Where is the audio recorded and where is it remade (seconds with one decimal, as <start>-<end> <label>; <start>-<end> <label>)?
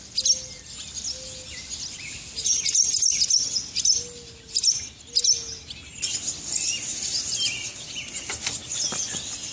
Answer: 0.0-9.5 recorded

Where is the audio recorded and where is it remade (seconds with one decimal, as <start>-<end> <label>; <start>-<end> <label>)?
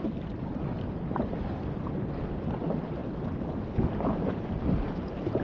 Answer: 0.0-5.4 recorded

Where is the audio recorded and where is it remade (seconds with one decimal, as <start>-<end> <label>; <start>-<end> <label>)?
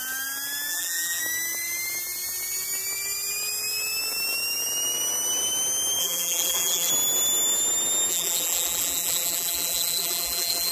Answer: 0.0-0.7 recorded; 0.7-1.2 remade; 1.2-6.0 recorded; 6.0-6.9 remade; 6.9-8.1 recorded; 8.1-10.7 remade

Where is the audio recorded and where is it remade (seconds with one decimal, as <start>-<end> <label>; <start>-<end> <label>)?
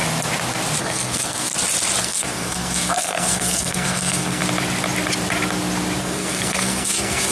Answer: 0.0-0.8 recorded; 0.8-1.5 remade; 1.5-2.0 recorded; 2.0-4.4 remade; 4.4-6.0 recorded; 6.0-7.3 remade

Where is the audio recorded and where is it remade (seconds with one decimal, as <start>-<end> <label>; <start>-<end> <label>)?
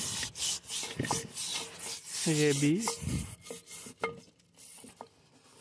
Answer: 0.0-5.6 recorded